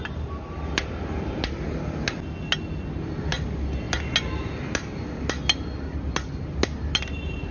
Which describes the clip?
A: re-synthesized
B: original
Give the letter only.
B